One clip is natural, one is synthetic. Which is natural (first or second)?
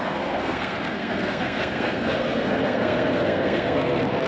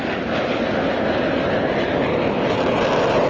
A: second